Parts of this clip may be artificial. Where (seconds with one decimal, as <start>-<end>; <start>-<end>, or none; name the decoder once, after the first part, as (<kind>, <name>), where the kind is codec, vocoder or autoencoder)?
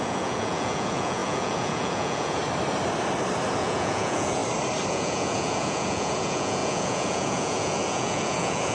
0.0-2.4 (vocoder, Vocos); 3.6-4.4; 4.9-8.7